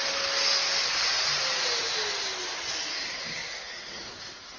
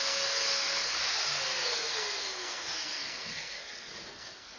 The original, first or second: first